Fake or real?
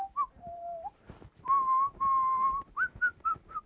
fake